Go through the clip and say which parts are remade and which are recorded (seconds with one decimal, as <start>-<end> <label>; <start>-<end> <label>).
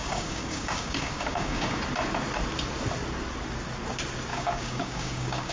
0.0-1.8 remade; 1.8-4.3 recorded; 4.3-5.5 remade